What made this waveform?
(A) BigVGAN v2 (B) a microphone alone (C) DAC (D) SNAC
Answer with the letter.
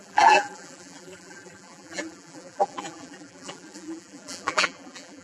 A